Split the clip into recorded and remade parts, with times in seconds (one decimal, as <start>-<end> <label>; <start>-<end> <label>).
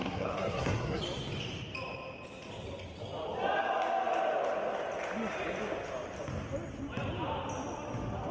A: 0.0-1.0 remade; 1.0-8.3 recorded